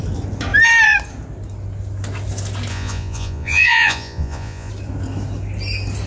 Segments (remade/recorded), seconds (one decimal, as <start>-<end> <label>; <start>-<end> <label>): 0.0-2.7 recorded; 2.7-4.7 remade; 4.7-6.1 recorded